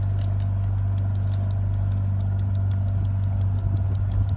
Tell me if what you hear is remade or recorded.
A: recorded